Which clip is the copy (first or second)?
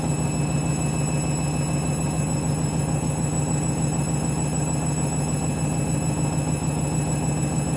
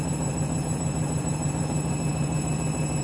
second